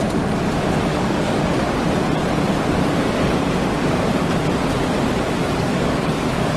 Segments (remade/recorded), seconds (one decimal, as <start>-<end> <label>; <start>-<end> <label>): 0.0-0.9 recorded; 0.9-1.7 remade; 1.7-5.4 recorded; 5.4-6.6 remade